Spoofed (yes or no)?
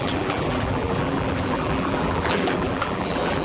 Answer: yes